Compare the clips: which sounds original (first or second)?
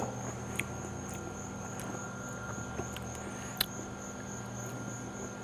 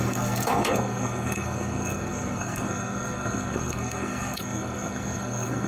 first